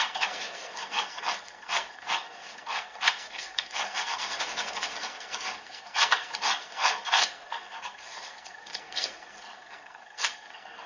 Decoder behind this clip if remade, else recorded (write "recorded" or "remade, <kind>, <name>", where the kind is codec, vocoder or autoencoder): remade, codec, SNAC